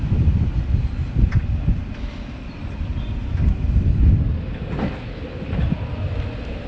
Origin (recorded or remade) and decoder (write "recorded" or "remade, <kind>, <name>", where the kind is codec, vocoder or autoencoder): recorded